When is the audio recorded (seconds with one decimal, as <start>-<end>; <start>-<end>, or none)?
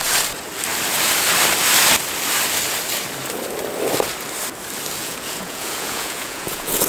0.0-5.0